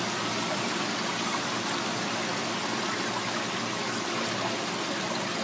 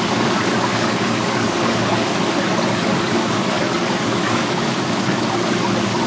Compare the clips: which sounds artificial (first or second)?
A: second